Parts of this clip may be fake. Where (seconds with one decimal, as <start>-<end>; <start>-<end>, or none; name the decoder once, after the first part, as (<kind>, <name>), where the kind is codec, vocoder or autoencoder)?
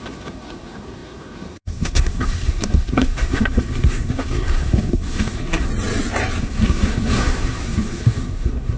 0.0-5.7 (codec, SNAC); 6.4-8.8